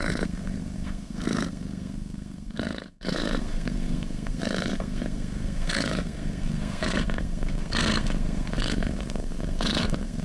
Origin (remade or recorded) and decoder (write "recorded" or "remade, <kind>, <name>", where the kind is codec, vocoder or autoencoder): remade, codec, SNAC